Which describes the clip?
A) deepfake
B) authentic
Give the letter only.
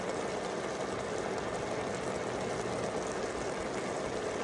B